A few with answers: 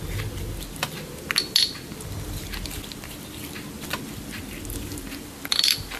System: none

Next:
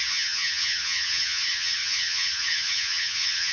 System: vocoder, HiFi-GAN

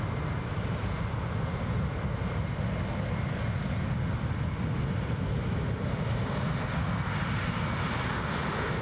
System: none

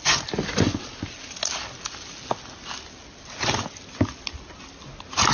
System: none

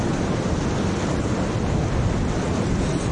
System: none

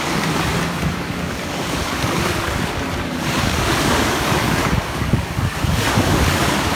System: codec, DAC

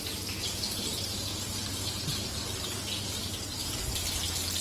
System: none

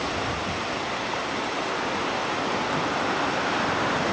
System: none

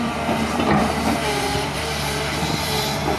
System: vocoder, BigVGAN v2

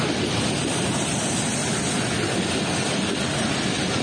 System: none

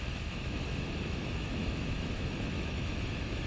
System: autoencoder, DAC-VAE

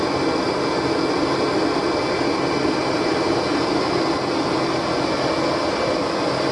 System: none